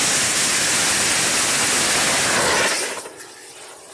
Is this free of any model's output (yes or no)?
yes